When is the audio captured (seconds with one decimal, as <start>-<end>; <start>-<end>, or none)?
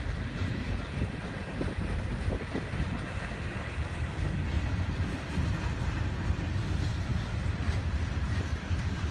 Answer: 0.0-9.1